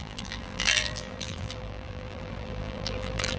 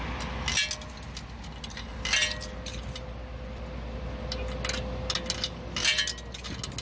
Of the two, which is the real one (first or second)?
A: second